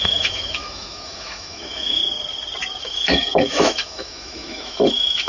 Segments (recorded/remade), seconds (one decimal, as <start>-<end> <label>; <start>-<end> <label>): 0.0-2.0 remade; 2.0-2.8 recorded; 2.8-5.3 remade